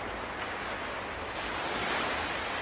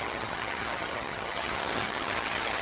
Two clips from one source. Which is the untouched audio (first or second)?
first